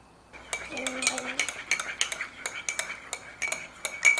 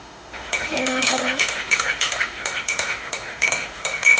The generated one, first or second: second